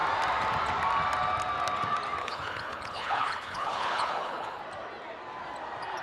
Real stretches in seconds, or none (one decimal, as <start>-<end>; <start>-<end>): 0.0-2.2; 4.6-6.0